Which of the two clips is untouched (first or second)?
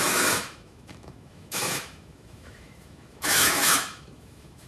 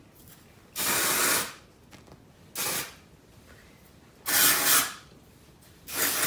second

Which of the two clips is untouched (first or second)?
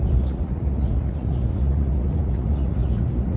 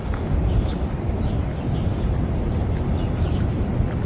second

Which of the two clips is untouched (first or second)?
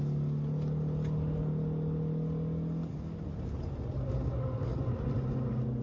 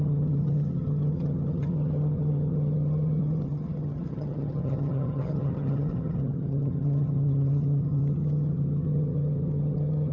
first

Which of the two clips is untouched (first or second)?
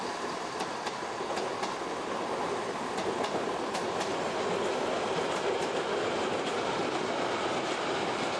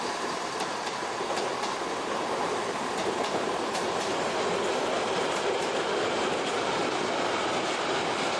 first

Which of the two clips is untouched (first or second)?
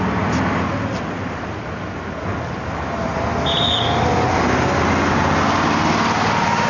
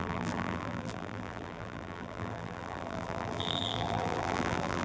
first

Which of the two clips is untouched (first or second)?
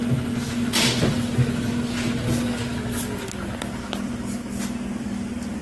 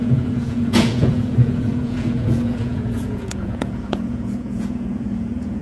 first